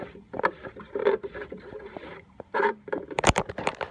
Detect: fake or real fake